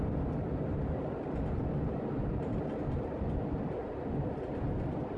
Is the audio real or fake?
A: real